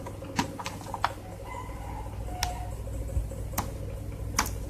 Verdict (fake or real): real